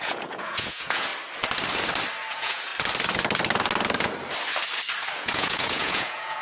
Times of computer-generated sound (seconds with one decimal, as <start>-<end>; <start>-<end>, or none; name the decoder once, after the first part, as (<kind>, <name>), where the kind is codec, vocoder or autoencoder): 0.0-1.1 (vocoder, Vocos); 2.3-2.7; 5.2-6.4